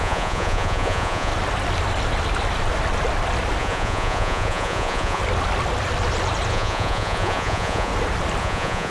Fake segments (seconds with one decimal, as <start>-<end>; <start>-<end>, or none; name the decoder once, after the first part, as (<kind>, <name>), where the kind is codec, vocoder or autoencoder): 0.0-1.3 (vocoder, Vocos); 3.6-5.2; 6.5-7.9; 8.4-8.9